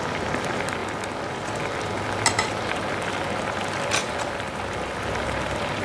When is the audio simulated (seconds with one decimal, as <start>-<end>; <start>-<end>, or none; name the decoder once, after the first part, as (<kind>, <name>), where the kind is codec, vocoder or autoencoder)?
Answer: 0.8-1.5 (vocoder, BigVGAN v2); 4.0-4.6